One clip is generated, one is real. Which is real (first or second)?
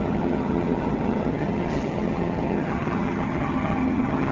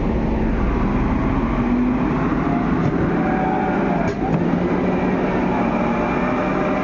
second